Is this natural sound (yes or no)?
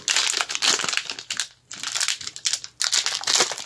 yes